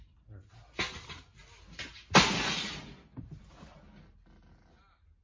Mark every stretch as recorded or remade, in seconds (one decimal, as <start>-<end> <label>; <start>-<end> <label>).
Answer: 0.0-5.2 recorded